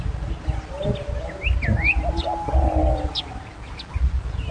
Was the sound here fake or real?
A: real